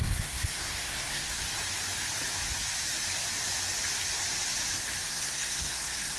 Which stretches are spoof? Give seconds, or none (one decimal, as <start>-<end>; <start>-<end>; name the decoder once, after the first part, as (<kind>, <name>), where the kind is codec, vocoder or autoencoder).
0.0-1.4 (codec, SNAC); 5.1-6.2